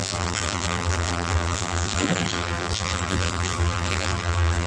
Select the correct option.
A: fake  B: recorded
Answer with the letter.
A